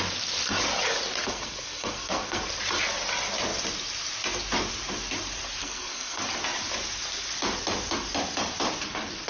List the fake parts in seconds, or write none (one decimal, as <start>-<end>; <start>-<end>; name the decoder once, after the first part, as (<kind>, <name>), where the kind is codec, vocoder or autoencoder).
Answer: 1.2-2.4 (codec, SNAC); 5.6-6.2